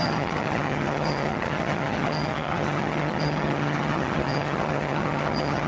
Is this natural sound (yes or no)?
no